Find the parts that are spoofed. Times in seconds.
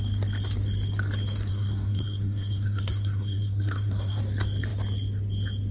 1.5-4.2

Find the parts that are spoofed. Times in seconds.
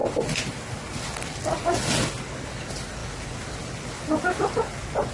none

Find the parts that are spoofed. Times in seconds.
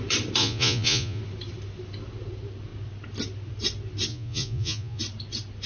0.4-1.2; 4.1-5.0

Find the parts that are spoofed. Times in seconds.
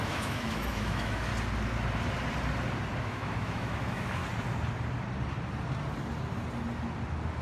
0.0-1.3; 3.0-4.2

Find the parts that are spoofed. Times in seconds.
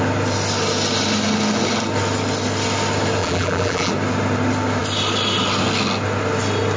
3.2-3.9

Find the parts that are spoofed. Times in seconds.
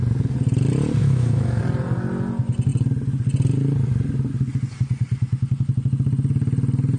1.0-1.6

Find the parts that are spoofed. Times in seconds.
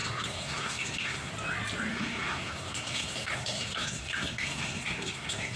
0.0-1.3; 1.9-5.6